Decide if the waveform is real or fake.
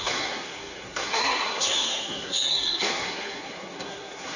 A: fake